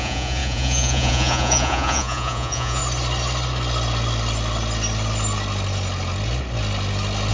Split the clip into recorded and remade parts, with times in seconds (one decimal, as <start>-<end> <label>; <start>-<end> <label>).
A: 0.0-2.8 remade; 2.8-7.3 recorded